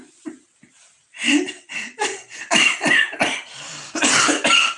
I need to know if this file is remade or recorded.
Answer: recorded